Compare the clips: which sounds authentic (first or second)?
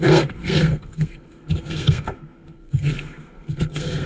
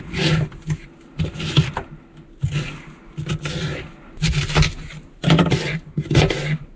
second